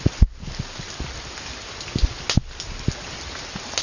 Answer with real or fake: real